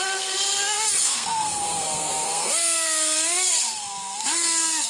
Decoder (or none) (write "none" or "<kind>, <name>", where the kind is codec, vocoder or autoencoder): codec, SNAC